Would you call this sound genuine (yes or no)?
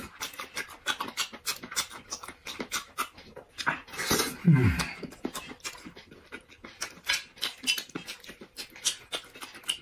yes